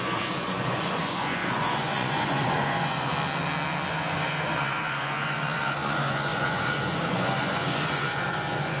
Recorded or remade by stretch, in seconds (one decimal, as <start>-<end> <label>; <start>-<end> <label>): 0.0-3.1 remade; 3.1-3.9 recorded; 3.9-8.8 remade